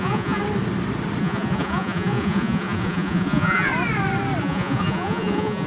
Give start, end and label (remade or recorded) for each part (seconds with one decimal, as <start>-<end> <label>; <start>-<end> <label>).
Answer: 0.0-0.4 remade; 0.4-1.2 recorded; 1.2-3.7 remade; 3.7-4.4 recorded; 4.4-5.7 remade